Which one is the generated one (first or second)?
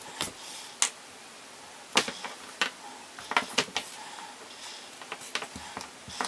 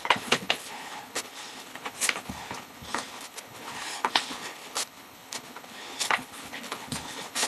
second